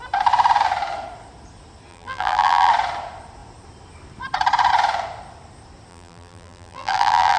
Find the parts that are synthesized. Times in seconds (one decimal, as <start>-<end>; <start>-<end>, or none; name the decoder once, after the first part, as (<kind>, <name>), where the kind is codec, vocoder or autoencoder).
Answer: 1.9-2.7 (vocoder, BigVGAN v2); 5.9-7.4